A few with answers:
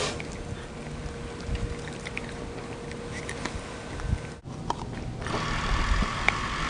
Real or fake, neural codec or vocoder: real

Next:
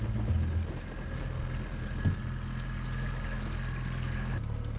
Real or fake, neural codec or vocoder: real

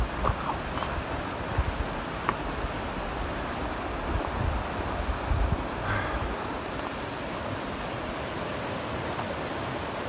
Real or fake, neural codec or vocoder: real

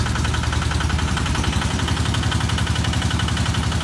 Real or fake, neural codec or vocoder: real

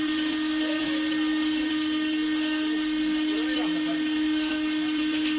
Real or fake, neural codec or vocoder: real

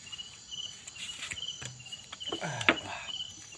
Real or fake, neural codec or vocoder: real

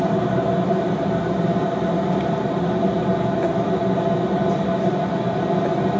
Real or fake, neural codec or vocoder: real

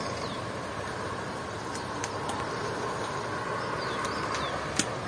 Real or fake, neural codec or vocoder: real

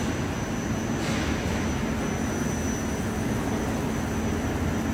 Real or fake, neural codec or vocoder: real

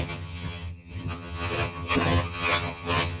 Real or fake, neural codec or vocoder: fake, vocoder, HiFi-GAN